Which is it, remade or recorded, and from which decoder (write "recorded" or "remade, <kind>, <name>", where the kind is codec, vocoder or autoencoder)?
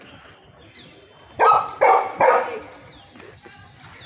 recorded